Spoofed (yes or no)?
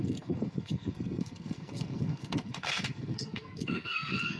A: yes